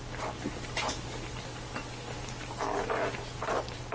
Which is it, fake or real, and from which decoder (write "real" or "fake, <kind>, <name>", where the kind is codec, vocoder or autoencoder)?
real